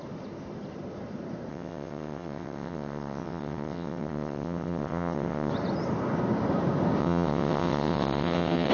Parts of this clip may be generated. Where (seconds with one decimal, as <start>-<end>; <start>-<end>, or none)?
1.5-5.5; 7.0-8.7